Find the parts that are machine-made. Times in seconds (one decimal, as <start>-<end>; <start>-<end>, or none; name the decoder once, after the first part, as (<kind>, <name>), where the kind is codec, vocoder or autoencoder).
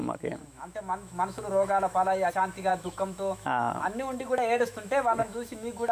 0.0-2.3 (autoencoder, DAC-VAE); 2.7-5.9